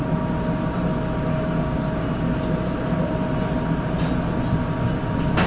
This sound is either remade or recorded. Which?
recorded